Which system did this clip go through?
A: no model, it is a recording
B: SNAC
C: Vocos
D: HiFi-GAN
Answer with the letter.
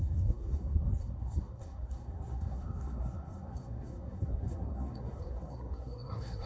B